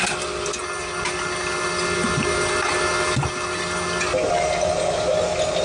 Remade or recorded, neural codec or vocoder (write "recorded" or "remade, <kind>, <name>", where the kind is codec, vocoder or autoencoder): recorded